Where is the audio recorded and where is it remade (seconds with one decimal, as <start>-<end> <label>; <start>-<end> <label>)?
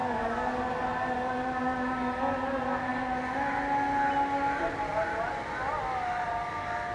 0.0-0.6 remade; 0.6-6.9 recorded